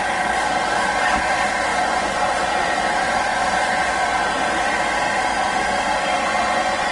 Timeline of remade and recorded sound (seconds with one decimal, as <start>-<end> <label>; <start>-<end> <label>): 0.0-1.7 recorded; 1.7-2.6 remade; 2.6-3.3 recorded; 3.3-3.9 remade; 3.9-6.1 recorded; 6.1-6.9 remade